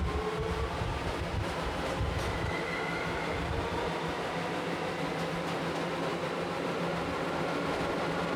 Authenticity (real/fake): real